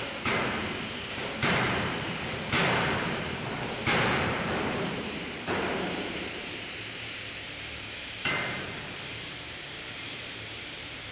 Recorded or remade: remade